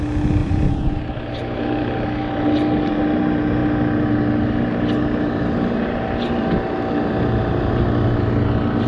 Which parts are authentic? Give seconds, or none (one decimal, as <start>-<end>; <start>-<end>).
0.0-0.4; 1.0-8.9